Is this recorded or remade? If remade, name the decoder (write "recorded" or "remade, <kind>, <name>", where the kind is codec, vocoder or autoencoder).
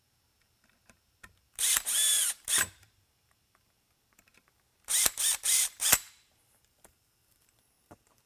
remade, vocoder, BigVGAN v2